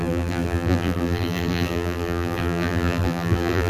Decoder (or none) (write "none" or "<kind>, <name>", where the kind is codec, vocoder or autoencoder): vocoder, BigVGAN v2